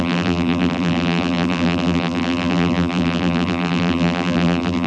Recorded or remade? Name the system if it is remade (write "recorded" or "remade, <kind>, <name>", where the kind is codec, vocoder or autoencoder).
remade, vocoder, BigVGAN v2